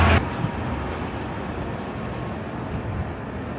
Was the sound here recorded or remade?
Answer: recorded